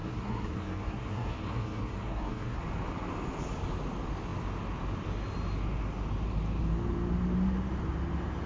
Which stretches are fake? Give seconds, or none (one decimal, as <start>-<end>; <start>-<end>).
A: 0.0-2.6